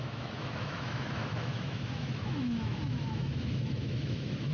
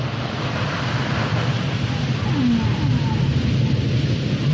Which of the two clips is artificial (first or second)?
first